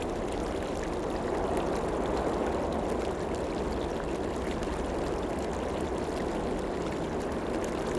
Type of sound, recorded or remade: recorded